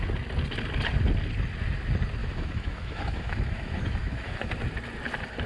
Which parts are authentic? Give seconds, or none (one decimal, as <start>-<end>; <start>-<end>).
0.0-2.2; 4.5-5.5